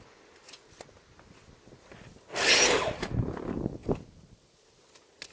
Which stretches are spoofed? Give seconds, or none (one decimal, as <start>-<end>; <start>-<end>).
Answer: none